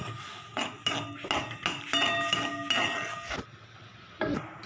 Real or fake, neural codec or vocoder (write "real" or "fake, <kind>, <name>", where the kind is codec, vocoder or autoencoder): real